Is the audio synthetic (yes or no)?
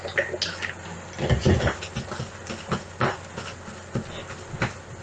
no